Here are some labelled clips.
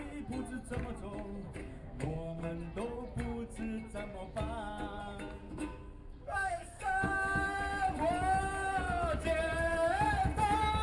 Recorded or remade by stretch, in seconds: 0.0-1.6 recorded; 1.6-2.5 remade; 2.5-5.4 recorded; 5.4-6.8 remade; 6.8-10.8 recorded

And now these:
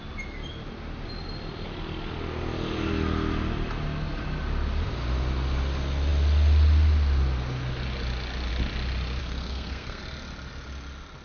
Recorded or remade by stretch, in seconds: 0.0-9.2 recorded; 9.2-10.0 remade; 10.0-11.2 recorded